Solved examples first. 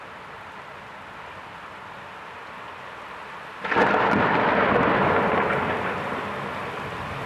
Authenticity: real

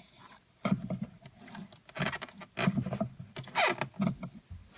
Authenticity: real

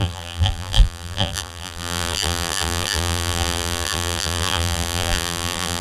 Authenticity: fake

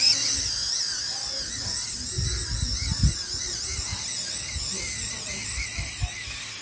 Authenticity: real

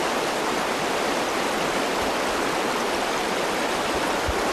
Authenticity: real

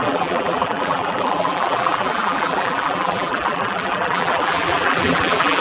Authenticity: fake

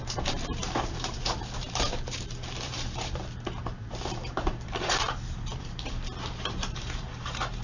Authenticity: fake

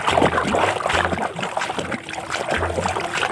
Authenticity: fake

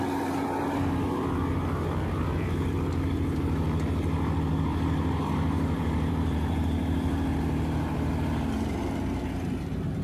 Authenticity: fake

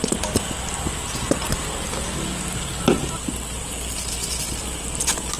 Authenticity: real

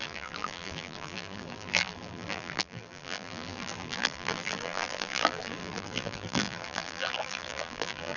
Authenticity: fake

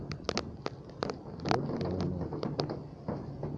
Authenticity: real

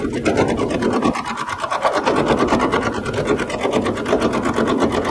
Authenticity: real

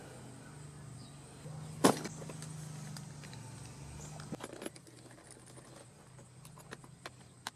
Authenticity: real